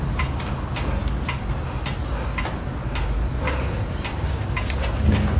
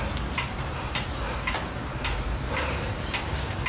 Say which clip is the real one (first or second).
first